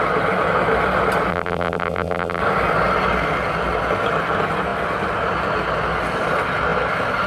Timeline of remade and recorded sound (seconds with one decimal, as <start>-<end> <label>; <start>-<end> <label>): 0.0-1.3 recorded; 1.3-2.4 remade; 2.4-7.3 recorded